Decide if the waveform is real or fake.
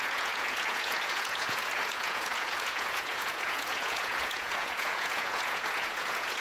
fake